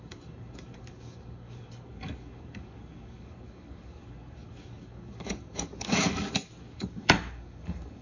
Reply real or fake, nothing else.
fake